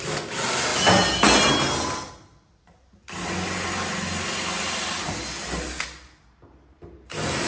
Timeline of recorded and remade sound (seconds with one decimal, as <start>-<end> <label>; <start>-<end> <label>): 0.0-7.5 recorded